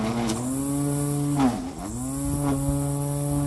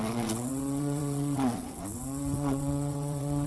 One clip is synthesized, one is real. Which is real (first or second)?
first